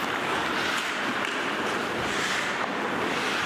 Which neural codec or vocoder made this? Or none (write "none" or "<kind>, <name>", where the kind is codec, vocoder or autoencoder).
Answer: vocoder, BigVGAN v2